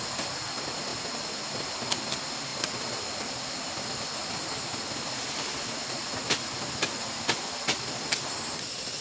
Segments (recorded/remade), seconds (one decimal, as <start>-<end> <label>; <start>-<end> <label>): 0.0-9.0 recorded